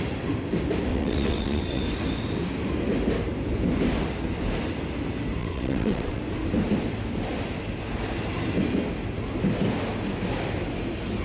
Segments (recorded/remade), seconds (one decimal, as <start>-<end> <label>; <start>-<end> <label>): 0.0-0.9 recorded; 0.9-1.8 remade; 1.8-5.4 recorded; 5.4-6.2 remade; 6.2-11.2 recorded